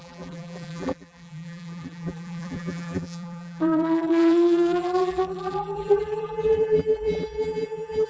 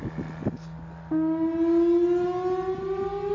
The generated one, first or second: first